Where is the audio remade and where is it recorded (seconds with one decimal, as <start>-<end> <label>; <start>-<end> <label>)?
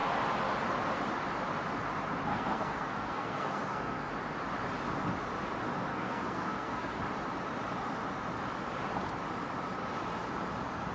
0.0-2.3 recorded; 2.3-4.1 remade; 4.1-5.9 recorded; 5.9-7.0 remade; 7.0-10.9 recorded